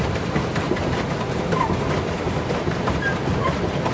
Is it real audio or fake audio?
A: real